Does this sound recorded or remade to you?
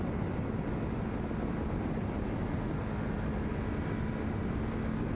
recorded